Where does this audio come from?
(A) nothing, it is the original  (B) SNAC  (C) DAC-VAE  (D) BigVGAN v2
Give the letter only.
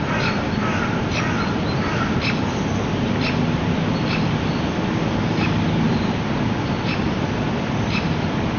A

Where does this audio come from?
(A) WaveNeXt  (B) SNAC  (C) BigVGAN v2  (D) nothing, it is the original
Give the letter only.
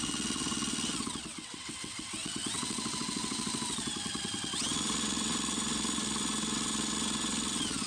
A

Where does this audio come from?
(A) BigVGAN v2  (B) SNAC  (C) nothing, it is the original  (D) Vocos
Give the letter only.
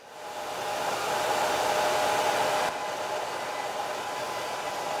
C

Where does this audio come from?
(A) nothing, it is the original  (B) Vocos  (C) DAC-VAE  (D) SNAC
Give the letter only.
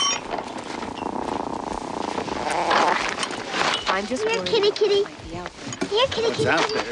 A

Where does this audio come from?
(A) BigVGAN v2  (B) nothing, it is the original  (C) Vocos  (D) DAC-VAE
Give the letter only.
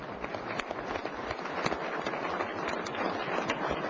B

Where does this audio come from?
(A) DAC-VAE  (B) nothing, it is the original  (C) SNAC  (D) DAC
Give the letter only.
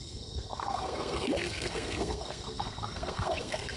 C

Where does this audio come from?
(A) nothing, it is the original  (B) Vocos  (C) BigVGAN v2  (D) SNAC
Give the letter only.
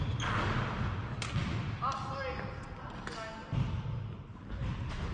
A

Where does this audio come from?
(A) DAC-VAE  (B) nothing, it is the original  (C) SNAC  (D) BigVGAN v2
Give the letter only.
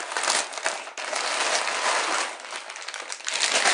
B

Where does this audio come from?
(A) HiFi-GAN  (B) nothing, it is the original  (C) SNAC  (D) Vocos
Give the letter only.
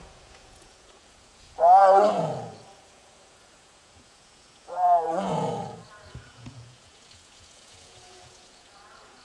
D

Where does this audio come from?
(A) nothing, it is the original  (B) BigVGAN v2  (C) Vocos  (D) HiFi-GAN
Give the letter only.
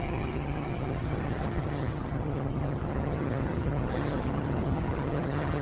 D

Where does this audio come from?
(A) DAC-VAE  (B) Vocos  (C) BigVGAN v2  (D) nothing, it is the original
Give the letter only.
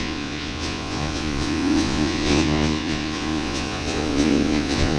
B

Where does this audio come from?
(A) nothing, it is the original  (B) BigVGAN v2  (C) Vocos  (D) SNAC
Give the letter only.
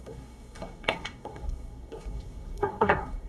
D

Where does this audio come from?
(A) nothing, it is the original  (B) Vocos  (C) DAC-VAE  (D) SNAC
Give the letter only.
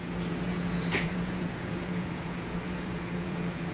B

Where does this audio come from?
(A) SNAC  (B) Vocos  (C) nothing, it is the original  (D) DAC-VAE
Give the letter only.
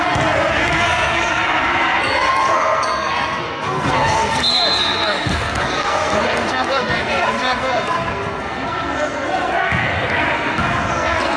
A